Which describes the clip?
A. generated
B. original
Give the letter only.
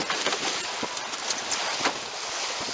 B